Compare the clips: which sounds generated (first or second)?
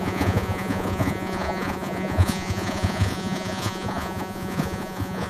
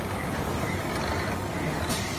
first